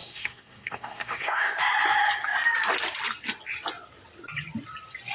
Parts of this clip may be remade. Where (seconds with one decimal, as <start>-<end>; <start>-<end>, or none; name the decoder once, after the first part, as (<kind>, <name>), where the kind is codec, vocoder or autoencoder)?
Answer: 0.0-1.6 (codec, SNAC)